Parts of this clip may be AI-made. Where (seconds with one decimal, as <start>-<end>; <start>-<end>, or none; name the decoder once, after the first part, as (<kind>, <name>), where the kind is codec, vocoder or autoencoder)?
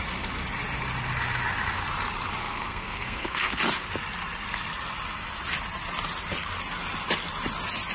2.4-3.5 (codec, SNAC)